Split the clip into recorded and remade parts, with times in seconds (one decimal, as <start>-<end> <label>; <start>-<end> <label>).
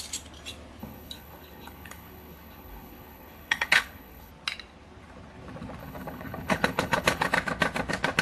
0.0-0.8 recorded; 0.8-4.3 remade; 4.3-5.8 recorded; 5.8-7.3 remade; 7.3-8.2 recorded